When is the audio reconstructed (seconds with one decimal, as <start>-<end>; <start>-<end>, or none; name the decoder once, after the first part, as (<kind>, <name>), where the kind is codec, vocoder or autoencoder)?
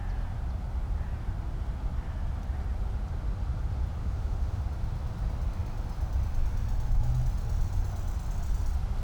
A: 4.0-4.6 (autoencoder, DAC-VAE)